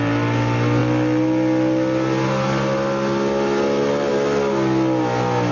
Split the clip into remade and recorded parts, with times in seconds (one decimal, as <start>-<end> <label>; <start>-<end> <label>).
0.0-5.5 recorded